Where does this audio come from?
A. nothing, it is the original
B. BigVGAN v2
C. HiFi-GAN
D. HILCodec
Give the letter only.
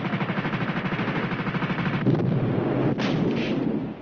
A